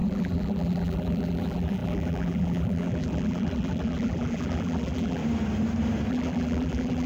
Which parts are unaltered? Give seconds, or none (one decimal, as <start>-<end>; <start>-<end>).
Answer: 5.2-6.1